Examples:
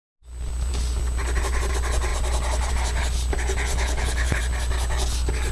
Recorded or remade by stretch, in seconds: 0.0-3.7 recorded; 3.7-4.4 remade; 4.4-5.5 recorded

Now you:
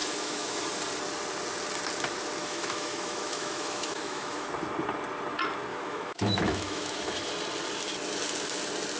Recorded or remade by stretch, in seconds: 0.0-0.6 remade; 0.6-2.4 recorded; 2.4-4.5 remade; 4.5-5.7 recorded; 5.7-7.3 remade; 7.3-9.0 recorded

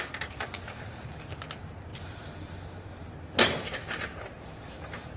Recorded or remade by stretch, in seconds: 0.0-1.9 recorded; 1.9-5.2 remade

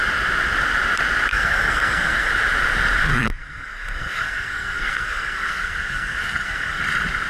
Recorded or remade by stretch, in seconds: 0.0-1.3 recorded; 1.3-2.3 remade; 2.3-3.1 recorded; 3.1-6.8 remade; 6.8-7.3 recorded

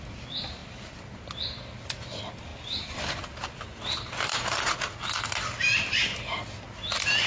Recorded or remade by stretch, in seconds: 0.0-4.3 recorded; 4.3-5.0 remade; 5.0-7.3 recorded

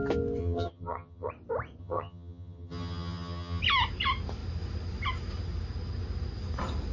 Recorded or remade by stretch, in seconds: 0.0-0.4 recorded; 0.4-1.3 remade; 1.3-1.8 recorded; 1.8-3.6 remade; 3.6-6.9 recorded

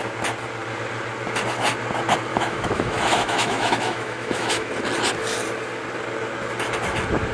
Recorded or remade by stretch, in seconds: 0.0-2.3 recorded; 2.3-4.7 remade; 4.7-7.3 recorded

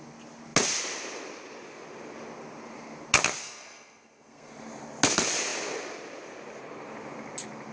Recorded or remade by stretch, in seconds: 0.0-3.4 recorded; 3.4-4.5 remade; 4.5-7.7 recorded